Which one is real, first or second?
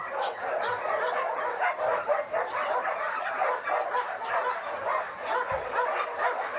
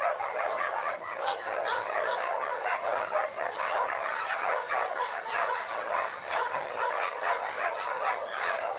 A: first